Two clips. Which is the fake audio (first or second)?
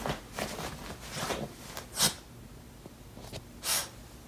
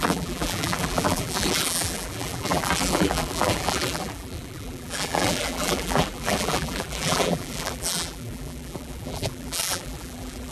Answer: second